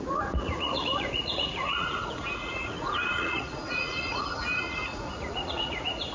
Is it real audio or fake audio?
fake